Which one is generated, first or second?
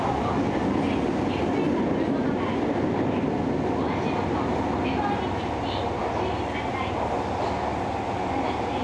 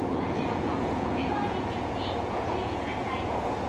second